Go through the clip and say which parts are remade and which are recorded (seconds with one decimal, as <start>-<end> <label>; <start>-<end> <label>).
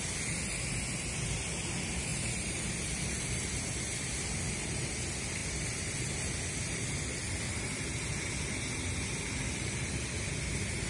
0.0-10.9 recorded